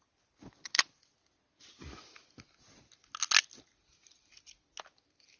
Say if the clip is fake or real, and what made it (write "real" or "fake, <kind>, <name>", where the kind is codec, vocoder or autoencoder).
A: real